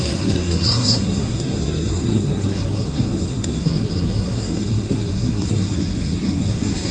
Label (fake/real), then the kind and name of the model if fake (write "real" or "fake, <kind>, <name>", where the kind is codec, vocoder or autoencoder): fake, codec, SNAC